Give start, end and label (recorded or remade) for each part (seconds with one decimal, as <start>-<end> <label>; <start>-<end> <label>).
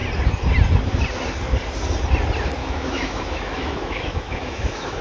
0.0-2.6 recorded; 2.6-5.0 remade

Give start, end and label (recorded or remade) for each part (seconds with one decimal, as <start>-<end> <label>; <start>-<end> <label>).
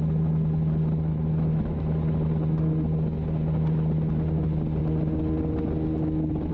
0.0-1.1 recorded; 1.1-1.9 remade; 1.9-6.5 recorded